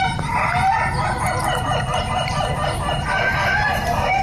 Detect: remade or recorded recorded